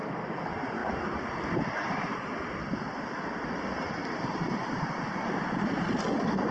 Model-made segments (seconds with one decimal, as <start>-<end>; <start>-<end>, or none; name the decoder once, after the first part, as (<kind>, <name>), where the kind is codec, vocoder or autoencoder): none